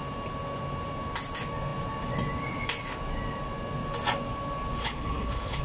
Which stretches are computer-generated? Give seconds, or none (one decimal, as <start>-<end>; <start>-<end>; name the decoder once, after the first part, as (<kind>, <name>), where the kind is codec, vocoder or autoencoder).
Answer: 4.8-5.6 (codec, HILCodec)

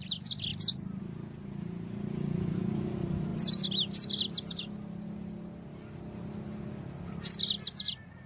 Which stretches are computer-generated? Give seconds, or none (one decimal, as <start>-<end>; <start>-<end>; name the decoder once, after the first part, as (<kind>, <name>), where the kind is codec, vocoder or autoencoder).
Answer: none

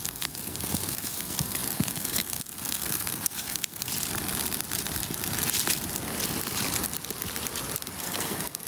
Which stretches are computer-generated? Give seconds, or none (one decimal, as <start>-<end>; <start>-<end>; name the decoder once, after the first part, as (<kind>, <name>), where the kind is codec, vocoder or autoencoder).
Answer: 0.0-3.9 (codec, SNAC); 8.0-8.7

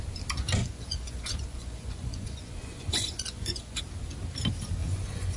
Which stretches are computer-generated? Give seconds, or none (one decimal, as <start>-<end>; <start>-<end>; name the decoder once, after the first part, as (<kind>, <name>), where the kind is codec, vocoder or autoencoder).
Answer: 0.6-3.8 (vocoder, Vocos); 4.8-5.4

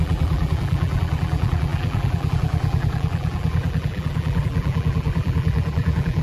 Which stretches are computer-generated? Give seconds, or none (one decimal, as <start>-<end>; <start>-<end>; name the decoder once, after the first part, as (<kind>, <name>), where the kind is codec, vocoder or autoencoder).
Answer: 0.0-6.2 (vocoder, BigVGAN v2)